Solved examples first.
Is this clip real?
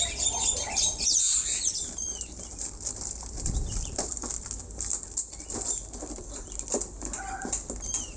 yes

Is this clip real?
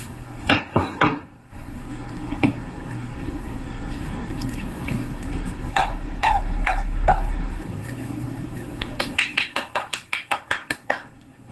no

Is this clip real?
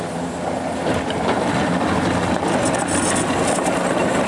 yes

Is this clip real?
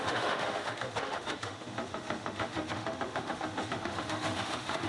no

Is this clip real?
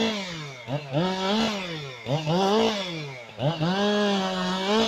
yes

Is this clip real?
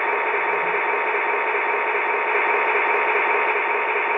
yes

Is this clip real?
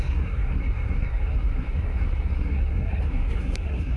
no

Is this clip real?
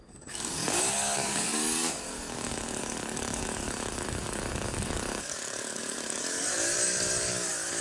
no